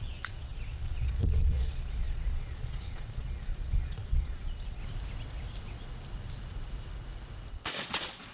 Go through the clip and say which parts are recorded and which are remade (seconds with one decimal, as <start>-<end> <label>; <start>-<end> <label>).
0.0-4.8 remade; 4.8-7.5 recorded; 7.5-8.3 remade